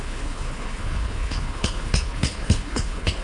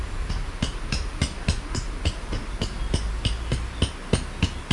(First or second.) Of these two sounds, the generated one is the first